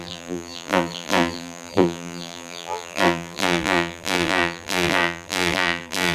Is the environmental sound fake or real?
fake